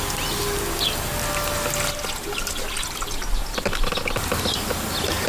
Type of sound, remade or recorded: recorded